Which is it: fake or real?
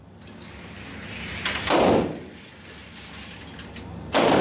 real